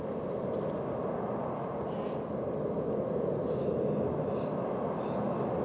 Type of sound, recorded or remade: recorded